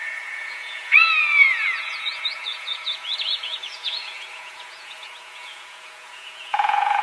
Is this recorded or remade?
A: remade